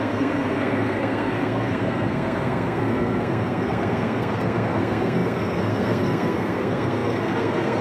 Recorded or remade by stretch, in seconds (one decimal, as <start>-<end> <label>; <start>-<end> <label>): 0.0-7.8 remade